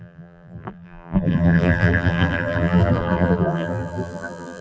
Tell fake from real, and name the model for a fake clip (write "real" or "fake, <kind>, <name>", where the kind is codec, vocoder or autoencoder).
fake, vocoder, BigVGAN v2